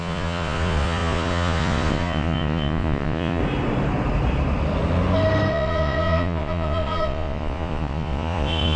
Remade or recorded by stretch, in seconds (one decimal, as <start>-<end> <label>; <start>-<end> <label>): 0.0-3.4 remade; 3.4-5.5 recorded; 5.5-8.8 remade